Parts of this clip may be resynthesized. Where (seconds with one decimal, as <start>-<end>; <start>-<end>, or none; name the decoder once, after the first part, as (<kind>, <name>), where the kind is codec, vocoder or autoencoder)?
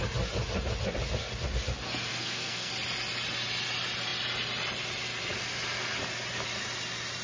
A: 2.1-2.7 (codec, SNAC)